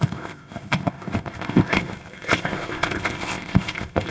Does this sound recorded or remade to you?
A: remade